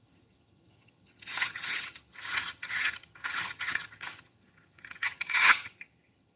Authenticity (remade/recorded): remade